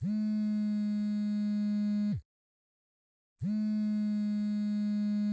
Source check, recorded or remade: recorded